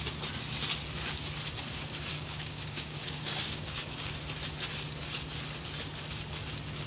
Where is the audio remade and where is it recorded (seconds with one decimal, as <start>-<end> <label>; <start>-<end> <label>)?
0.0-2.1 recorded; 2.1-4.1 remade; 4.1-6.9 recorded

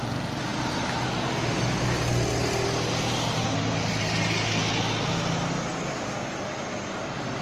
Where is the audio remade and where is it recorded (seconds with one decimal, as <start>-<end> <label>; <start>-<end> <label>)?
0.0-7.4 recorded